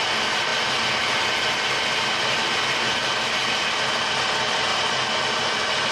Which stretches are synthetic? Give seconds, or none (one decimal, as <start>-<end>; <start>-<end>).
0.0-0.5; 4.0-4.7